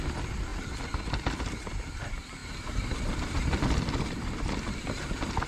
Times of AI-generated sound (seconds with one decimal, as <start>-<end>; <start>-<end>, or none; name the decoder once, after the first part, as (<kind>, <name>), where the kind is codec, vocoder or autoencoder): none